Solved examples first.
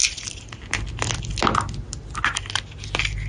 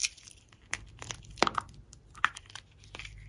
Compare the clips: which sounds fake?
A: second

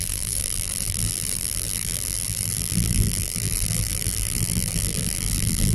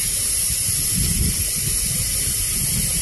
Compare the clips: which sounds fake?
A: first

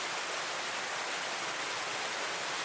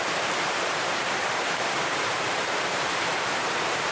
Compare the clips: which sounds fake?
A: second